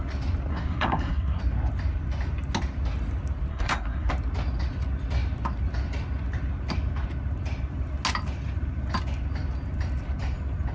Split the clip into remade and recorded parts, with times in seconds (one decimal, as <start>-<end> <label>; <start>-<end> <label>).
0.0-0.5 recorded; 0.5-1.4 remade; 1.4-3.5 recorded; 3.5-4.1 remade; 4.1-10.7 recorded